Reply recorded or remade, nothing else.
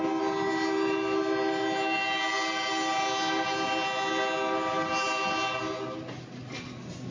recorded